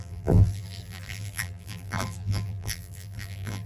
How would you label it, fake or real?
fake